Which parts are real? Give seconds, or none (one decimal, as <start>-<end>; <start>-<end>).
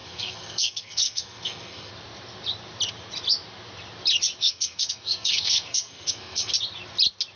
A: 1.9-4.4; 6.5-7.4